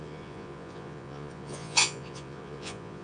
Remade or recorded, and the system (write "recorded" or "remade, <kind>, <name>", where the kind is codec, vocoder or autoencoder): remade, vocoder, Vocos